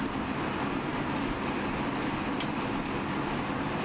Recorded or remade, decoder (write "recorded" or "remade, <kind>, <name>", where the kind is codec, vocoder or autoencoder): recorded